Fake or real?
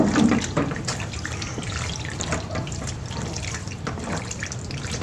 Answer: fake